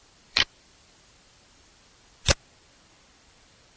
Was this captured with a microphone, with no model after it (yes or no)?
no